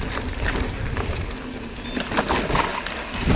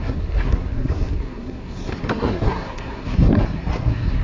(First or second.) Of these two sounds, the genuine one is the first